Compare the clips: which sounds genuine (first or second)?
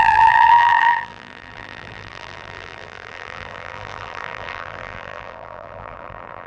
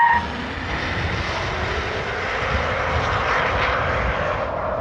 second